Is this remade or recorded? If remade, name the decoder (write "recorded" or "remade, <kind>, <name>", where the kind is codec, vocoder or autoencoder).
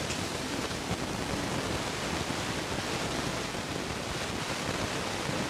recorded